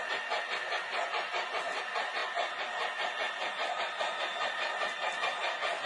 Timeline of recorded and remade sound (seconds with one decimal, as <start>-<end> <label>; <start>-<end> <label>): 0.0-1.1 recorded; 1.1-1.8 remade; 1.8-5.9 recorded

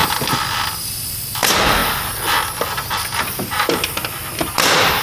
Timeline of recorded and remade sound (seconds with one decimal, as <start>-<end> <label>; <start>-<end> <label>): 0.0-5.0 recorded

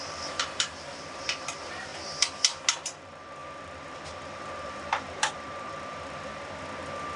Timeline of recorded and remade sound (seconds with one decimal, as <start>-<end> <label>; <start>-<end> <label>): 0.0-1.9 remade; 1.9-2.8 recorded; 2.8-6.3 remade; 6.3-7.2 recorded

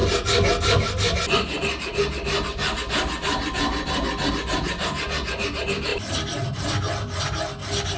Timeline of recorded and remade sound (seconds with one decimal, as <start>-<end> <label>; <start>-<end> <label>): 0.0-8.0 recorded

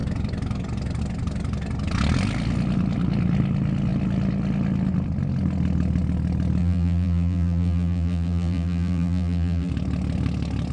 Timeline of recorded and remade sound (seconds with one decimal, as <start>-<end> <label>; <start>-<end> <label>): 0.0-6.6 recorded; 6.6-9.7 remade; 9.7-10.7 recorded

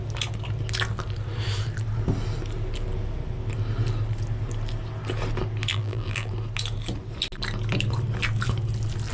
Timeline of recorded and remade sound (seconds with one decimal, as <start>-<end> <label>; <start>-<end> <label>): 0.0-5.7 recorded; 5.7-6.3 remade; 6.3-9.1 recorded

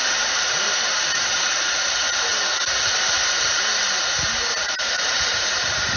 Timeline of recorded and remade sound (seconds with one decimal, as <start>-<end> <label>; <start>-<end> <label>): 0.0-2.3 remade; 2.3-4.6 recorded; 4.6-6.0 remade

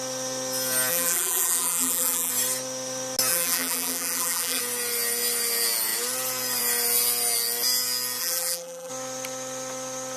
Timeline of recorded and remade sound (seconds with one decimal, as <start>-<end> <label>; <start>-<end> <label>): 0.0-0.9 recorded; 0.9-2.3 remade; 2.3-3.3 recorded; 3.3-4.6 remade; 4.6-8.2 recorded; 8.2-8.9 remade; 8.9-10.2 recorded